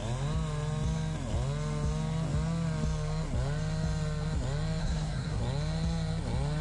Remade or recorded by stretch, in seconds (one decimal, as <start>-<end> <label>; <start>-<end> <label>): 0.0-4.8 recorded; 4.8-5.4 remade; 5.4-6.6 recorded